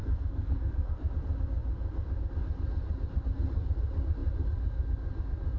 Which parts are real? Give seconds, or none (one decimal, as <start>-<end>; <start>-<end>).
1.1-5.6